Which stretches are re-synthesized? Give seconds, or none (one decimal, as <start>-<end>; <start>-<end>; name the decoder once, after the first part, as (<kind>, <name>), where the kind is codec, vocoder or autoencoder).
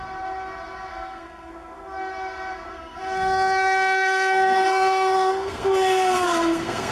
0.9-1.5 (codec, SNAC); 2.7-6.9